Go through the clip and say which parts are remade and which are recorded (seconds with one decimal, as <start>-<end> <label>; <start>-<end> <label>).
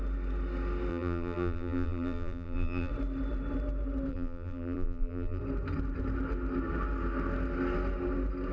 0.0-0.9 recorded; 0.9-2.9 remade; 2.9-4.1 recorded; 4.1-5.4 remade; 5.4-8.5 recorded